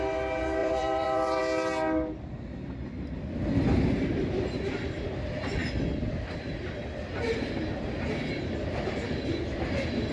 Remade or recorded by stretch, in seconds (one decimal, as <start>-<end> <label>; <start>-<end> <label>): 0.0-0.6 recorded; 0.6-1.4 remade; 1.4-10.1 recorded